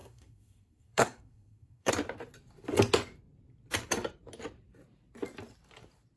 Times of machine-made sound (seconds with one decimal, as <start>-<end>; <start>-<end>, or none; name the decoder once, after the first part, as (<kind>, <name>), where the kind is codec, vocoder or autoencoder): 0.0-1.9 (codec, SNAC)